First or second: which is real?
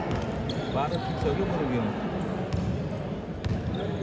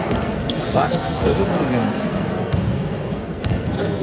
first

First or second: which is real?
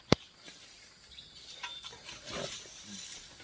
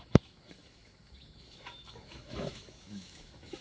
first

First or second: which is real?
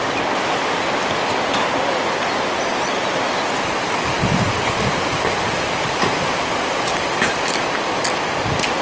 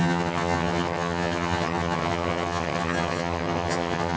first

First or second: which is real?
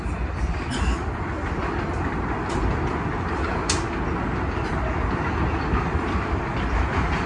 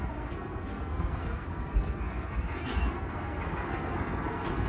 first